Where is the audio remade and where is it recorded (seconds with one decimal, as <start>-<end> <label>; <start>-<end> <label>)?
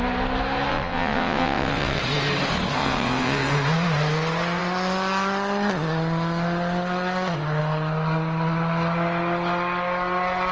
0.0-0.7 recorded; 0.7-2.0 remade; 2.0-2.8 recorded; 2.8-3.5 remade; 3.5-10.5 recorded